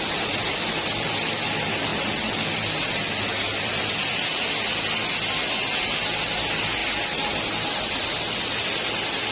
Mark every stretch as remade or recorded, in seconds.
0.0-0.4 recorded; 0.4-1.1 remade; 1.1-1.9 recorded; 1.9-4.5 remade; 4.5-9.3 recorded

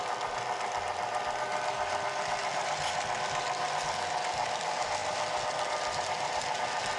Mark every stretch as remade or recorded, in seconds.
0.0-7.0 recorded

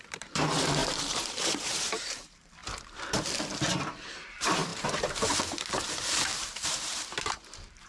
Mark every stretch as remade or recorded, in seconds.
0.0-2.6 remade; 2.6-3.8 recorded; 3.8-7.9 remade

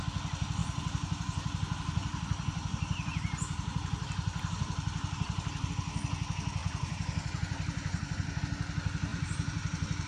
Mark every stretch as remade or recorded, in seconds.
0.0-0.6 recorded; 0.6-5.7 remade; 5.7-6.6 recorded; 6.6-8.4 remade; 8.4-9.1 recorded; 9.1-10.1 remade

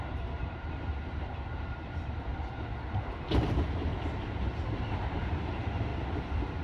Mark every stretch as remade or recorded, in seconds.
0.0-2.3 remade; 2.3-2.9 recorded; 2.9-3.9 remade; 3.9-4.7 recorded; 4.7-5.9 remade; 5.9-6.6 recorded